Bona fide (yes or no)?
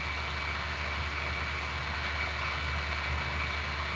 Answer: yes